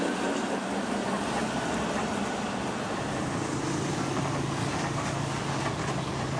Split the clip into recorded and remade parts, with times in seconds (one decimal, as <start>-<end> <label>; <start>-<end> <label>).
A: 0.0-3.9 recorded; 3.9-5.6 remade; 5.6-6.4 recorded